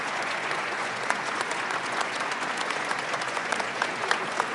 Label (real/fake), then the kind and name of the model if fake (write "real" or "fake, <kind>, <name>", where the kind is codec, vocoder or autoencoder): fake, vocoder, Vocos